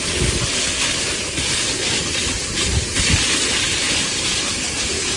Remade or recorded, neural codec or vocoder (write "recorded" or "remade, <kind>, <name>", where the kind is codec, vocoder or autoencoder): recorded